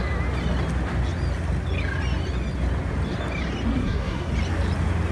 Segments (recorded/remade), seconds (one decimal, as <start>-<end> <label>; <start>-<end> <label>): 0.0-3.7 recorded; 3.7-4.3 remade; 4.3-5.1 recorded